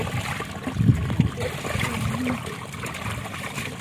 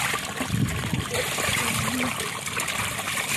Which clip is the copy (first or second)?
second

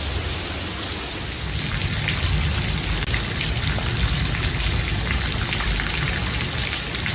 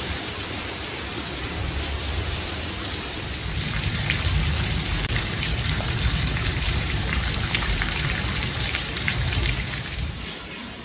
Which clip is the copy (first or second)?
second